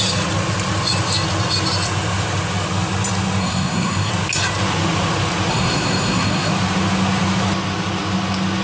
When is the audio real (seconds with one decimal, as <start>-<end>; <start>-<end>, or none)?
0.0-3.4; 4.1-5.5; 6.5-8.6